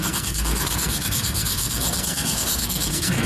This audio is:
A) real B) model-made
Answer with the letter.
B